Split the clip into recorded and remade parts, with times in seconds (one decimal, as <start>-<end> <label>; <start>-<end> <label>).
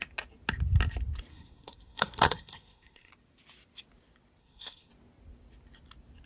0.0-1.3 recorded; 1.3-3.1 remade; 3.1-4.4 recorded; 4.4-4.9 remade; 4.9-6.3 recorded